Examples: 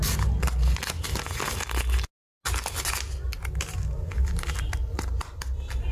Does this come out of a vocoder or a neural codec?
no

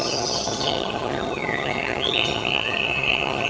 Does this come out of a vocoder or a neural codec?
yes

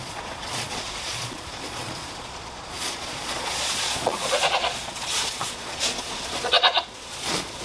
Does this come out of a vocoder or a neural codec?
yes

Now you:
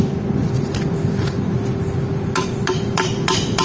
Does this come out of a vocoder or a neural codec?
no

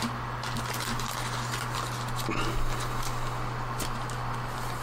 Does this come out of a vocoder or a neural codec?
no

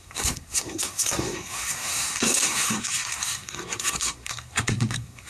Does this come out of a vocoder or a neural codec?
yes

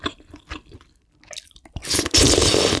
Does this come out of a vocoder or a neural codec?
no